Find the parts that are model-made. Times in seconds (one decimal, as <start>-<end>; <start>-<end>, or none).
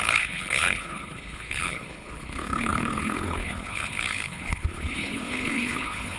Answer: 0.0-6.2